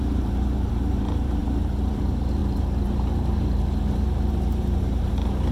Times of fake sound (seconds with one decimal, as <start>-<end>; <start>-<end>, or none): 0.0-5.5